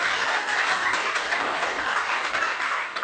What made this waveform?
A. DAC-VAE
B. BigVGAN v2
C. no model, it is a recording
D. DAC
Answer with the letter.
D